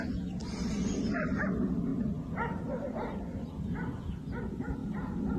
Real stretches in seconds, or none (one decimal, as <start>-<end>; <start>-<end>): 0.0-0.4; 1.4-5.4

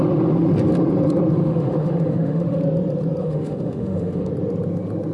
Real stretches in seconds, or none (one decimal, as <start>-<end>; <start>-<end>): 0.0-1.4; 2.6-3.2; 4.3-5.1